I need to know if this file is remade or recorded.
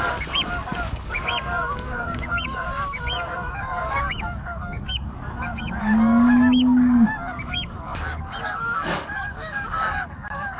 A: remade